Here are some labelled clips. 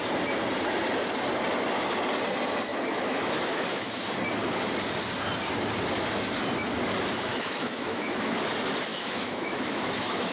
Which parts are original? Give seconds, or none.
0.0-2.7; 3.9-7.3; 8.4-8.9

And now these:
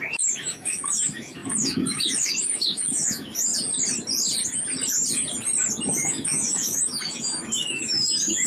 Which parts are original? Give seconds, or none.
3.5-6.0

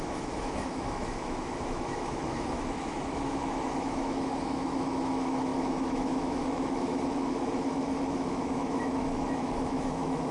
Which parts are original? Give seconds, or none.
none

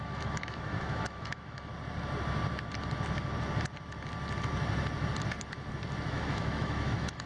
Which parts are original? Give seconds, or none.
1.7-6.1